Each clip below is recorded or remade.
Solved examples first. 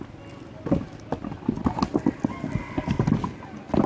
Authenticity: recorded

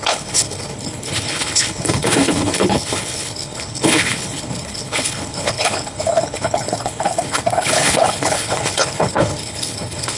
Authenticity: remade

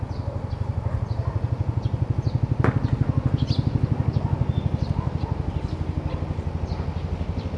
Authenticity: recorded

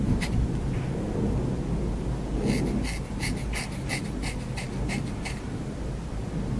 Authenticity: recorded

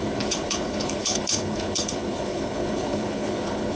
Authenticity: remade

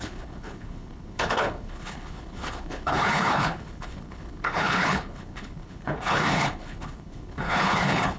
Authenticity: remade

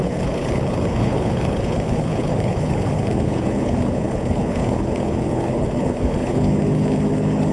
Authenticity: remade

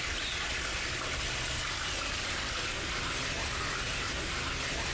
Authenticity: recorded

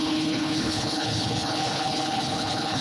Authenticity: remade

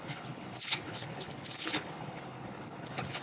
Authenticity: remade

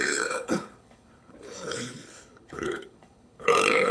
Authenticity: remade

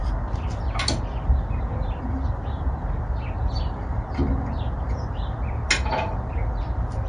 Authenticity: recorded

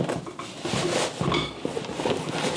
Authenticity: recorded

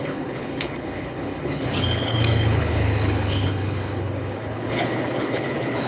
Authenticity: remade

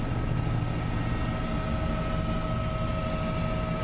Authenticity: recorded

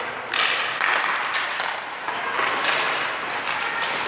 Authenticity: recorded